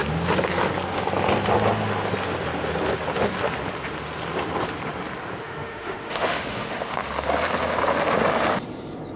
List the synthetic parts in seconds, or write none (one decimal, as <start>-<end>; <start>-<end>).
5.4-7.0